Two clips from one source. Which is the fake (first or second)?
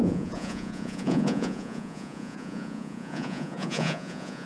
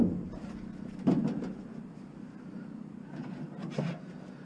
first